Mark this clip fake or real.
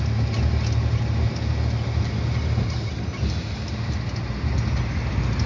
real